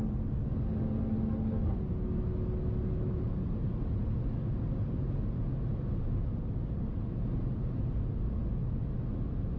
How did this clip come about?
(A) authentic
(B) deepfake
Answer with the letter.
A